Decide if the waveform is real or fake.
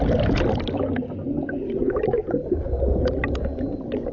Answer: real